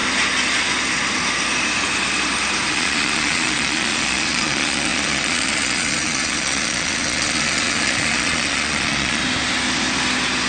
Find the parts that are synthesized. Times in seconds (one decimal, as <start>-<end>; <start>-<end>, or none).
2.7-9.2